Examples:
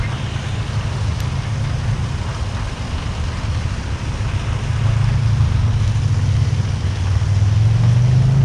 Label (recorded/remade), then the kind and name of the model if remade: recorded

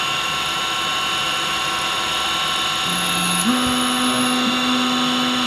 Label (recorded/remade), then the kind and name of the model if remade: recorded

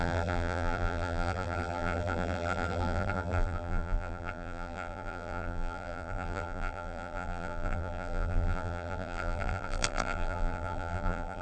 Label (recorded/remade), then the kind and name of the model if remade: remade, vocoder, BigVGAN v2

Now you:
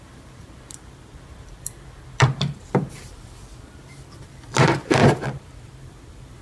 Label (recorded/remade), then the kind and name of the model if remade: remade, vocoder, BigVGAN v2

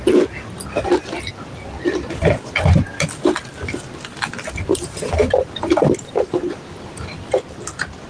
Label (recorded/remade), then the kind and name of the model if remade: recorded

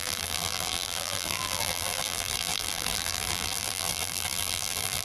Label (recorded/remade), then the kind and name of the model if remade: remade, vocoder, BigVGAN v2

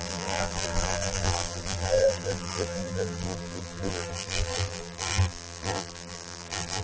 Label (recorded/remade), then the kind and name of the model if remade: remade, vocoder, BigVGAN v2